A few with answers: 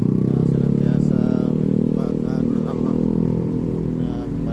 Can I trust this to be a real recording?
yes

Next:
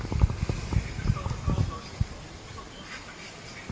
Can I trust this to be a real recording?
yes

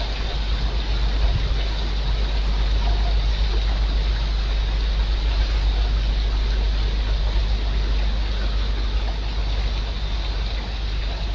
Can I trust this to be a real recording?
yes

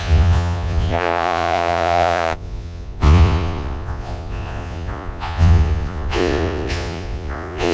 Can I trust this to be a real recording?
no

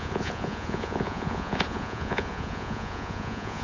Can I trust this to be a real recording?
no